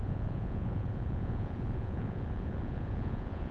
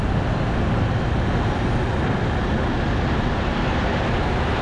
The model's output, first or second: first